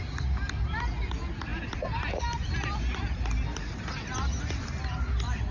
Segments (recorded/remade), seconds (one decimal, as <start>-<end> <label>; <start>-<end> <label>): 0.0-5.5 recorded